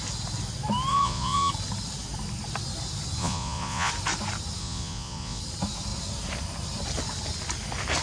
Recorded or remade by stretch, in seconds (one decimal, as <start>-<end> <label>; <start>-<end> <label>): 0.0-0.9 recorded; 0.9-1.5 remade; 1.5-3.2 recorded; 3.2-3.9 remade; 3.9-4.6 recorded; 4.6-5.4 remade; 5.4-8.0 recorded